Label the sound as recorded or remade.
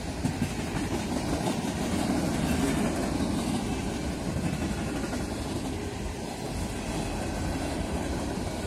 recorded